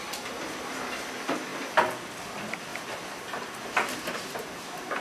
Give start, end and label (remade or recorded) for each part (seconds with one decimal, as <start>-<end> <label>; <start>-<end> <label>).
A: 0.0-5.0 recorded